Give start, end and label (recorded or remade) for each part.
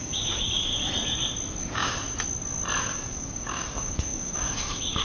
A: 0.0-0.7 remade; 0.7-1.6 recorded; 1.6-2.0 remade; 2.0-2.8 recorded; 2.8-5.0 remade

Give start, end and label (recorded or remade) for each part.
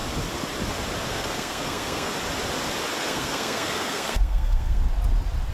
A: 0.0-1.1 recorded; 1.1-2.1 remade; 2.1-3.0 recorded; 3.0-4.8 remade; 4.8-5.5 recorded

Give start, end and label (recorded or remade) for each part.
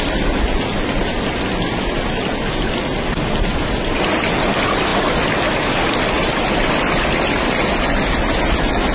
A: 0.0-8.9 recorded